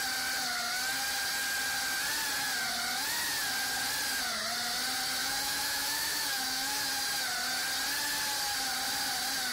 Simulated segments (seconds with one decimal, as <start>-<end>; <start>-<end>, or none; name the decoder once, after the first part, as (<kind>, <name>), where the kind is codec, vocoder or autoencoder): 5.2-6.9 (autoencoder, DAC-VAE)